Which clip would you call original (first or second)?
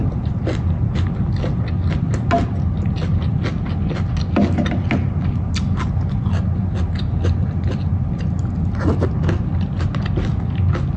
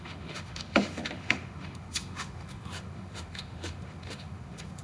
first